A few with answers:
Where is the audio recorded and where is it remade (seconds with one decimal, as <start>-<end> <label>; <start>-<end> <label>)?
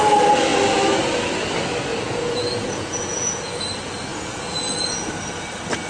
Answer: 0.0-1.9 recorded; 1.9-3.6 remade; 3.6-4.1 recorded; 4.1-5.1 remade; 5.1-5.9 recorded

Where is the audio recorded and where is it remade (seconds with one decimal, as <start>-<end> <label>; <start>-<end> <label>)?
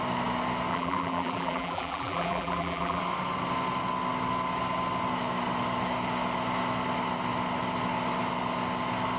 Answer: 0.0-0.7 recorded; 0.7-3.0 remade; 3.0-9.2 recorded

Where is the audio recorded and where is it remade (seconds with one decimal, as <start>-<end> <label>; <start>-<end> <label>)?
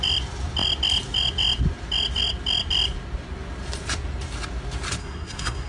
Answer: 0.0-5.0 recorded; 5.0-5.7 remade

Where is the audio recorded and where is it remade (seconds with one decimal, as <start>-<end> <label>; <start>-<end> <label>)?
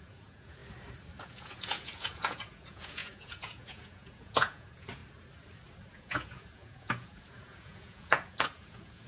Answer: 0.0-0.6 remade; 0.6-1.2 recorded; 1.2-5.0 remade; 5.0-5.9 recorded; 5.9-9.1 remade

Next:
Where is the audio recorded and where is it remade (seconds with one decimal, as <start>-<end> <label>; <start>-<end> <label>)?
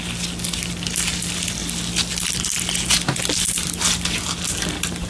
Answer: 0.0-5.1 recorded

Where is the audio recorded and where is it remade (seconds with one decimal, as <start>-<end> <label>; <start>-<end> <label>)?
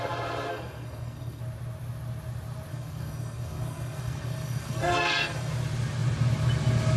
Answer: 0.0-0.5 recorded; 0.5-1.4 remade; 1.4-2.7 recorded; 2.7-5.5 remade; 5.5-7.0 recorded